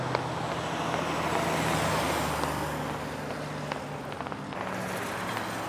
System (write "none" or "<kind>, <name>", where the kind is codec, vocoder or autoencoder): none